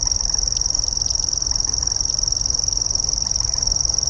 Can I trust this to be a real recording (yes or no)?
no